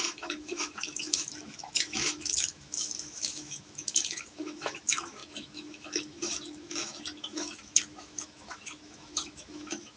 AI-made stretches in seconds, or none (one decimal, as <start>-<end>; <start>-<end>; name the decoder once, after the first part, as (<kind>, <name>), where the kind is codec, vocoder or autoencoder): 0.0-10.0 (autoencoder, DAC-VAE)